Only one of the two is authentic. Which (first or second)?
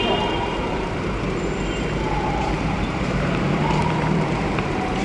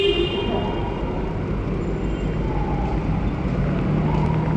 second